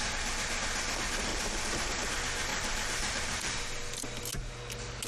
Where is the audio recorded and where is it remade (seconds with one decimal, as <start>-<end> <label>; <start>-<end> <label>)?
0.0-1.3 recorded; 1.3-1.9 remade; 1.9-2.5 recorded; 2.5-3.8 remade; 3.8-5.1 recorded